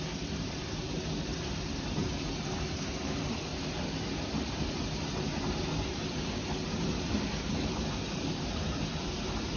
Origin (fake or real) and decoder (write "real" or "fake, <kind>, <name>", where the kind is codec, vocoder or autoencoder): fake, vocoder, BigVGAN v2